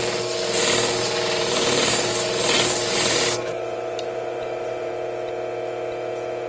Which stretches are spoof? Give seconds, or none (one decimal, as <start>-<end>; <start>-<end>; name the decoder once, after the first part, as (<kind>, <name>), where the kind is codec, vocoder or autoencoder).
1.0-4.9 (vocoder, BigVGAN v2)